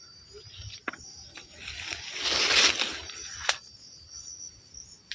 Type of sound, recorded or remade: recorded